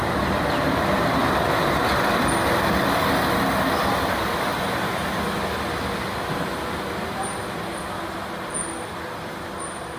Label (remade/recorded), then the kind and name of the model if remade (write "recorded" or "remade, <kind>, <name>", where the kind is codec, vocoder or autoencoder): recorded